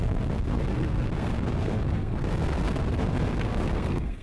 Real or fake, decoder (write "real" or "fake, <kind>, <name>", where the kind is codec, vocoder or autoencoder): fake, codec, SNAC